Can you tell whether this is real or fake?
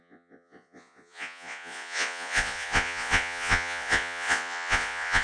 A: fake